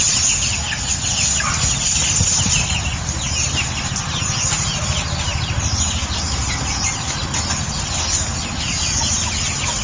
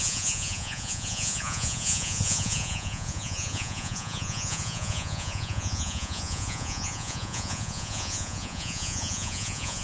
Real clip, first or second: first